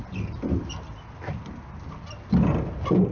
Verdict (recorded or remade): recorded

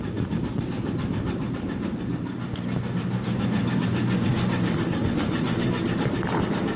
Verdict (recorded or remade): recorded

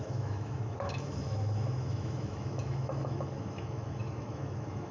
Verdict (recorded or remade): remade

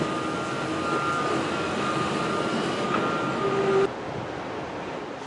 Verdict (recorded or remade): recorded